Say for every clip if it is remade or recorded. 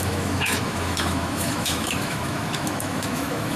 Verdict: remade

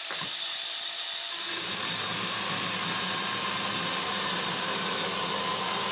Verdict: recorded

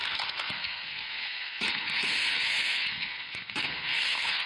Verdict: remade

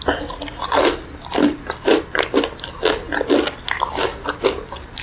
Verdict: recorded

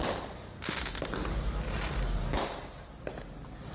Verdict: recorded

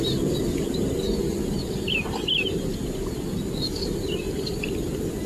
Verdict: recorded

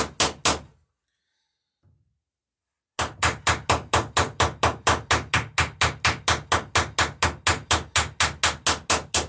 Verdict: recorded